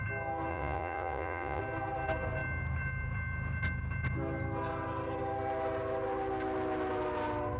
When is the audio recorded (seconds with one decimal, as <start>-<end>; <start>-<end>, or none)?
0.0-0.5; 1.6-7.6